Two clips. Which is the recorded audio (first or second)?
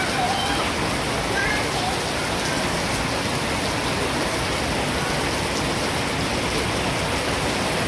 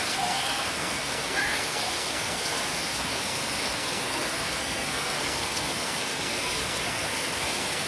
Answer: first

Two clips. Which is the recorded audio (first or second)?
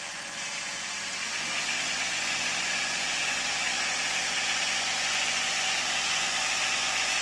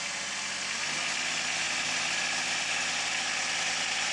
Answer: second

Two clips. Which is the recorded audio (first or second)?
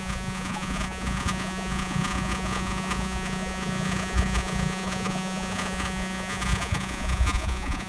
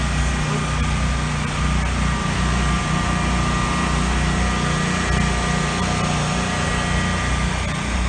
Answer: second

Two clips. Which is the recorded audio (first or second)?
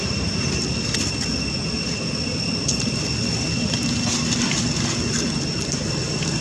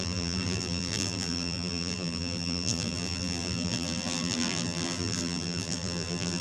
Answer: first